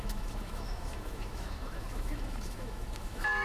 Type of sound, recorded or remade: remade